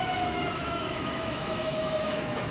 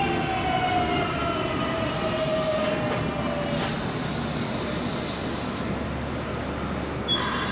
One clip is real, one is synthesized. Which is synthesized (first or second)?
first